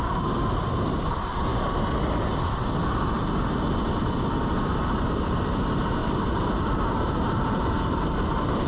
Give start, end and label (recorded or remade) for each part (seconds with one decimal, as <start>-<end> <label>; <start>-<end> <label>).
0.0-1.5 remade; 1.5-5.0 recorded; 5.0-8.7 remade